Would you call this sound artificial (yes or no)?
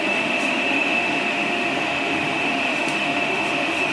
yes